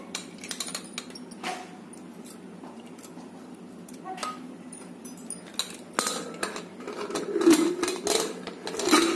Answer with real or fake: real